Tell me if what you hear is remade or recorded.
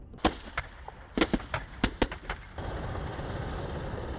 recorded